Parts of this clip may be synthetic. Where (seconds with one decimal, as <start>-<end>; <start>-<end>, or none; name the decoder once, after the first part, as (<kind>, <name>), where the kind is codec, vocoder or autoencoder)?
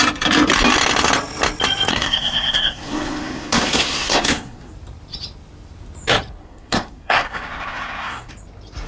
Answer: 1.9-4.7 (codec, SNAC); 6.4-8.3